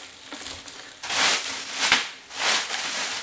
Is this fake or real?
real